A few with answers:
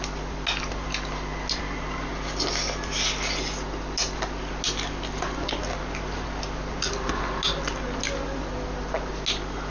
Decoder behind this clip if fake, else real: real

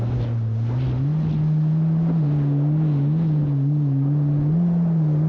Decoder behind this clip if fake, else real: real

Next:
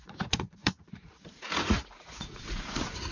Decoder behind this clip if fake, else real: fake, vocoder, Vocos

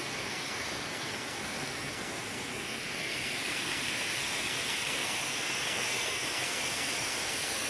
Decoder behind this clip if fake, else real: fake, codec, SNAC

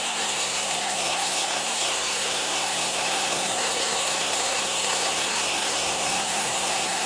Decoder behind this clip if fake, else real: fake, codec, SNAC